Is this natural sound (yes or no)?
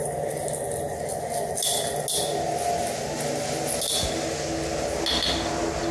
yes